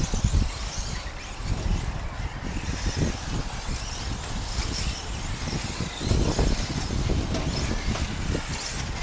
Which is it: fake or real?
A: real